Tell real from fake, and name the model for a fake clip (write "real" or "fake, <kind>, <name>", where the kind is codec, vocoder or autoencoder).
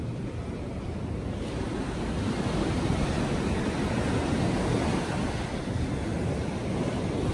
real